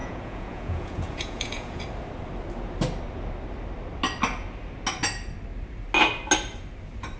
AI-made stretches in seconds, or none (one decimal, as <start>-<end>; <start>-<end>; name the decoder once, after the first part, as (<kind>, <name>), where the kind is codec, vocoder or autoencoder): 0.0-1.8 (vocoder, Vocos)